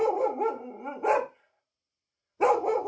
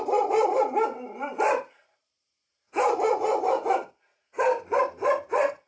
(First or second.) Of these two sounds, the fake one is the second